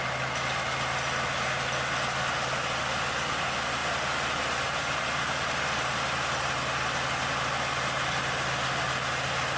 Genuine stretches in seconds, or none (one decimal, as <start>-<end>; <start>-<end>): 0.0-9.6